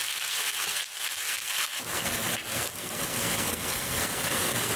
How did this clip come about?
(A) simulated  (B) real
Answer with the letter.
A